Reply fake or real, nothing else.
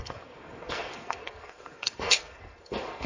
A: fake